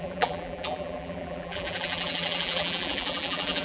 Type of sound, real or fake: fake